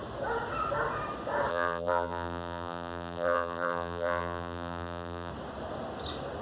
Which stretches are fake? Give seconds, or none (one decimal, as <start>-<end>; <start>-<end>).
1.5-5.3